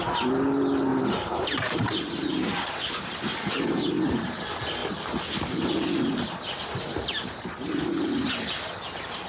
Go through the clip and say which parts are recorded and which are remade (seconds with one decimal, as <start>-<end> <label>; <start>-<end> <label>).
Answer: 0.0-0.9 recorded; 0.9-2.3 remade; 2.3-3.3 recorded; 3.3-3.9 remade; 3.9-9.3 recorded